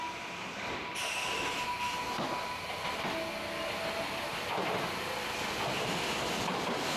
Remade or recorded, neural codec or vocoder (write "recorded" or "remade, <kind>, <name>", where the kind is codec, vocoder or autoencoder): recorded